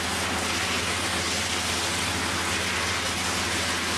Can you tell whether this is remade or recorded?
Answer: recorded